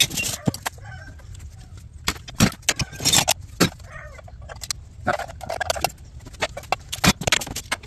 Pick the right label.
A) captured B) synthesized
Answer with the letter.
A